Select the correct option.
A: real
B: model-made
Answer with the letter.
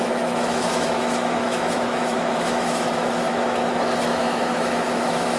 B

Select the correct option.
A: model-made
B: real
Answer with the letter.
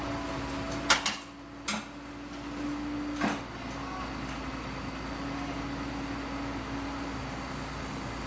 B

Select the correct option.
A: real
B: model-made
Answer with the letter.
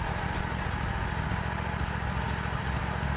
A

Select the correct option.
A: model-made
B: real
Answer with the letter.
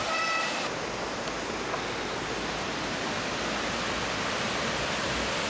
B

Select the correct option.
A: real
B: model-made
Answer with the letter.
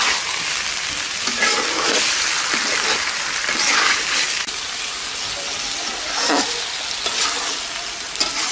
A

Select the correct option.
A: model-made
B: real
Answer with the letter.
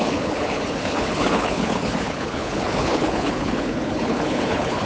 A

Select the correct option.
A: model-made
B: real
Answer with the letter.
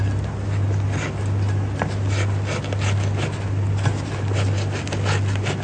B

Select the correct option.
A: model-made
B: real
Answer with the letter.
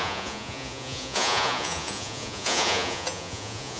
A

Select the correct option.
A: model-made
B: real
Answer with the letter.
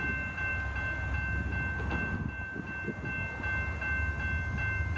B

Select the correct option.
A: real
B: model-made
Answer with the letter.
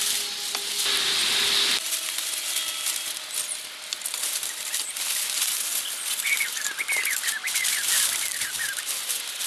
A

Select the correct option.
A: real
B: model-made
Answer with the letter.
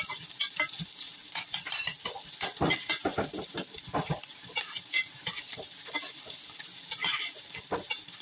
A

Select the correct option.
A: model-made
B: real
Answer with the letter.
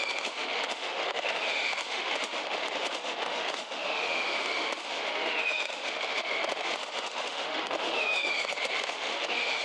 A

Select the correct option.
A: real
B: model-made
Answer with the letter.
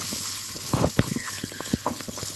B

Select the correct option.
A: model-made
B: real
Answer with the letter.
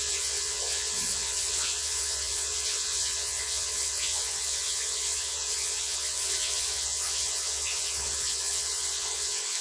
A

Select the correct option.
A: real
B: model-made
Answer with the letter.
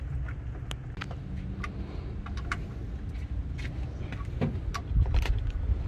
A